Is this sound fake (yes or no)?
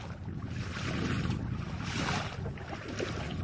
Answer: no